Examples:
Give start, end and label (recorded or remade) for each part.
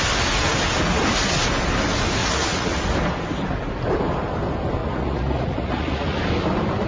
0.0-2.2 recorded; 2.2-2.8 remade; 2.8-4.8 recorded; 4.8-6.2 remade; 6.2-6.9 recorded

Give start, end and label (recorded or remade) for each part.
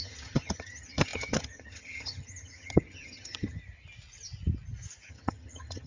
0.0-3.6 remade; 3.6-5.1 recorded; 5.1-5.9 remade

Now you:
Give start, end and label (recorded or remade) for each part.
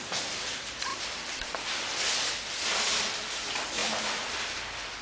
0.0-5.0 remade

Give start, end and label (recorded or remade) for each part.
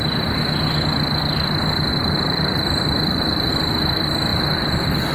0.0-1.9 recorded; 1.9-3.5 remade; 3.5-4.3 recorded; 4.3-5.1 remade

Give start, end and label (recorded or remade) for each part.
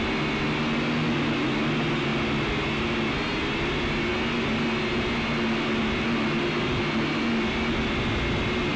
0.0-8.8 recorded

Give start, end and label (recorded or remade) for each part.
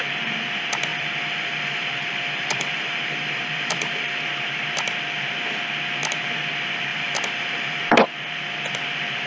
0.0-0.9 recorded; 0.9-4.2 remade; 4.2-6.9 recorded; 6.9-7.8 remade; 7.8-9.3 recorded